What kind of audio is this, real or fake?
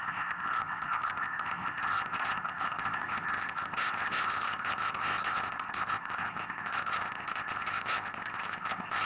fake